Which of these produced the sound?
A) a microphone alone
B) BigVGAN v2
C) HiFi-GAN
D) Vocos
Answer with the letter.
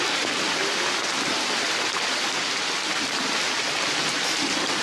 A